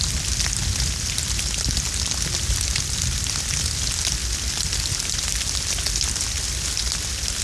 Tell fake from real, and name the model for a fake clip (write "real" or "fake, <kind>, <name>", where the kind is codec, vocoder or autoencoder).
real